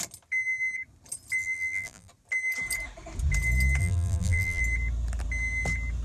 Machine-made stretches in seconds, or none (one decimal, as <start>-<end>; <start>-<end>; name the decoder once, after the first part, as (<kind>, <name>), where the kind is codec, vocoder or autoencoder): 1.4-2.1 (vocoder, BigVGAN v2); 3.8-4.6